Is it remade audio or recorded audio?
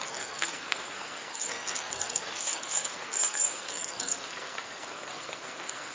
remade